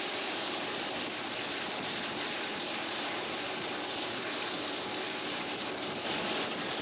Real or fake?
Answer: fake